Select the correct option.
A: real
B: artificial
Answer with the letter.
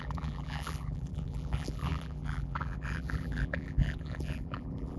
B